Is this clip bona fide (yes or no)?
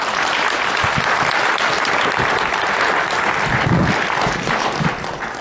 yes